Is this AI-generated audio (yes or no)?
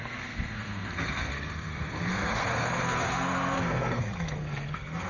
yes